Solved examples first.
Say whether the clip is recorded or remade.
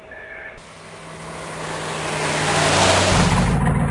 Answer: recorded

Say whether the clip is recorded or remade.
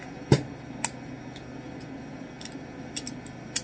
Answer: recorded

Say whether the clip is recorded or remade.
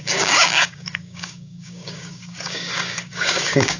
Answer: remade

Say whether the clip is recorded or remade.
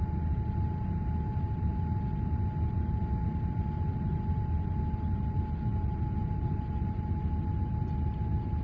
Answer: recorded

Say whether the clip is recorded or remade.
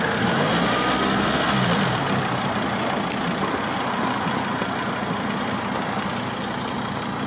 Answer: recorded